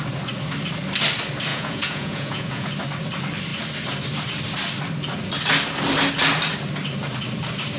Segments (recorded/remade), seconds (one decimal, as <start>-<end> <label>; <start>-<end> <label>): 0.0-1.5 recorded; 1.5-2.7 remade; 2.7-7.8 recorded